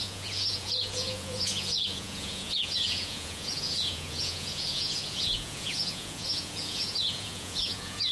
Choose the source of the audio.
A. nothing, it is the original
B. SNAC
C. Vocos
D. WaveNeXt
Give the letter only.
C